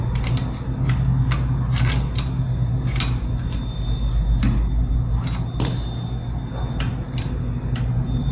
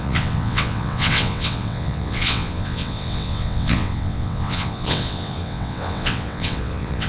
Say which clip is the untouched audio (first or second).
first